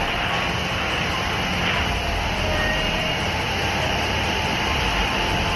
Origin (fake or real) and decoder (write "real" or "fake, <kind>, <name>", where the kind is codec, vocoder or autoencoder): fake, vocoder, BigVGAN v2